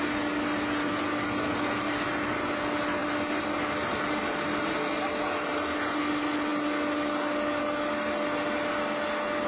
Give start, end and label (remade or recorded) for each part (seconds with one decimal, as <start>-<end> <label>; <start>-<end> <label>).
0.0-9.5 recorded